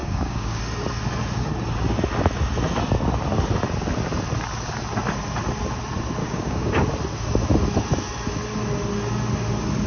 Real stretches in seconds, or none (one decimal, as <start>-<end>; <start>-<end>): 0.6-6.2; 6.7-9.9